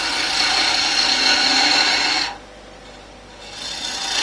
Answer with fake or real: real